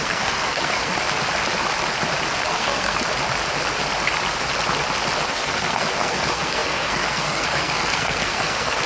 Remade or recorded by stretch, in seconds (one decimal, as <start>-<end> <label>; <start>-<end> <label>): 0.0-0.9 remade; 0.9-2.5 recorded; 2.5-3.0 remade; 3.0-5.3 recorded; 5.3-8.9 remade